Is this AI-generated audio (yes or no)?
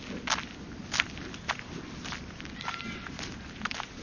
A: no